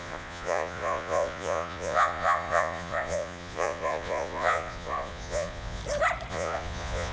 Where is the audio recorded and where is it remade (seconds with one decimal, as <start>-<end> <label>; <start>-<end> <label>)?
0.0-5.8 remade; 5.8-6.3 recorded; 6.3-7.1 remade